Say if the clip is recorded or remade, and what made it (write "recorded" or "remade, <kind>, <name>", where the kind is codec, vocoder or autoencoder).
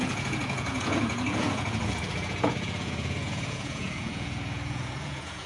remade, vocoder, Vocos